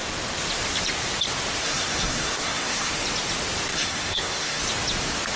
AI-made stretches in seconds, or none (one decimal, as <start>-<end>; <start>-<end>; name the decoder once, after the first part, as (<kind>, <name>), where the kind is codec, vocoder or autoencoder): 1.6-2.9 (codec, SNAC); 3.7-4.6